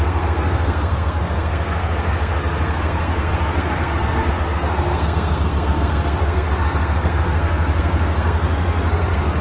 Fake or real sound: fake